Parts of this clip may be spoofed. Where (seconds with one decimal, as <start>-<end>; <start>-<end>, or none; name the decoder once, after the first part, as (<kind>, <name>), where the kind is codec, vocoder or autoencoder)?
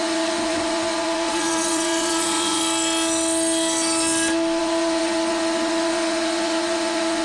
0.0-2.6 (vocoder, Vocos); 4.6-7.2